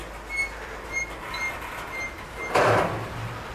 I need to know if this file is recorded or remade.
recorded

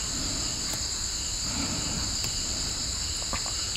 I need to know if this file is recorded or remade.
recorded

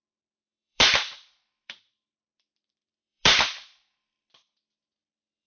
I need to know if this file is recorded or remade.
remade